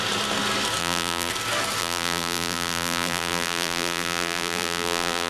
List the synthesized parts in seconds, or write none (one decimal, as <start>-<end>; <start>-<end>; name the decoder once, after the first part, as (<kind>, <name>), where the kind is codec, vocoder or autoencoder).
0.8-1.3 (vocoder, BigVGAN v2); 1.8-5.3